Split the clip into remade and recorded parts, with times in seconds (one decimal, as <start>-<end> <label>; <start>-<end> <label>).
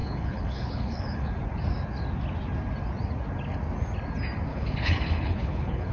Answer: 0.0-1.3 remade; 1.3-4.5 recorded; 4.5-5.9 remade